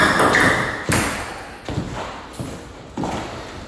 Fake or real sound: real